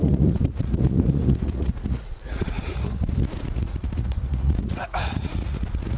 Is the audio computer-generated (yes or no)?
yes